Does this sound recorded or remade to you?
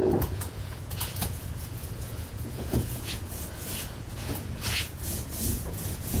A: remade